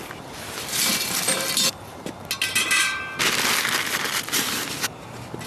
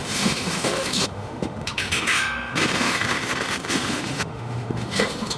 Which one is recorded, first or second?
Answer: first